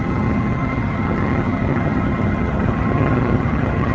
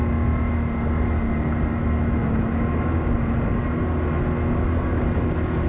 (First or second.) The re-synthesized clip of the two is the first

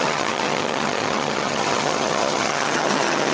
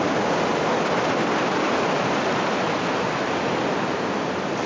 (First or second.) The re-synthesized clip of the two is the first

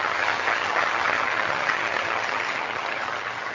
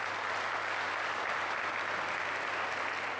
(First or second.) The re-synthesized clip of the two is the first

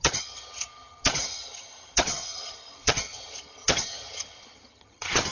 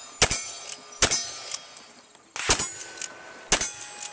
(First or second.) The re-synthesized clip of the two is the first